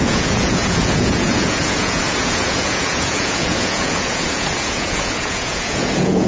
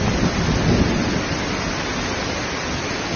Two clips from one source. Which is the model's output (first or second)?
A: first